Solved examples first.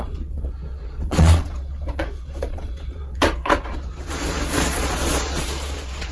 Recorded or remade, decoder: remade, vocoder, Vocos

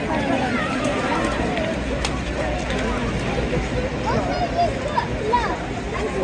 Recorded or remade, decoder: recorded